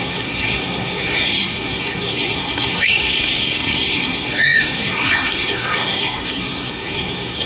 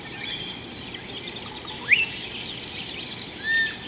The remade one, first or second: first